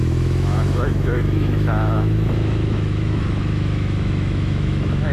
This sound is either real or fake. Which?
fake